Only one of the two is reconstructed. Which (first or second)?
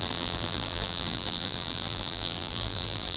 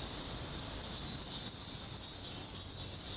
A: first